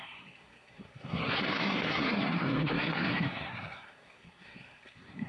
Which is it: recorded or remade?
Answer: remade